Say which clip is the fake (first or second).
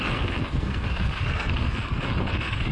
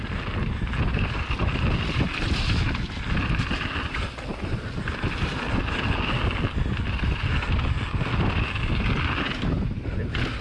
first